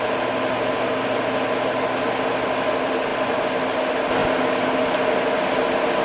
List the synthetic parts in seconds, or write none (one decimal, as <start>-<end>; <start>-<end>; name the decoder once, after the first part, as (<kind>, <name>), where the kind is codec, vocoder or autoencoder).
none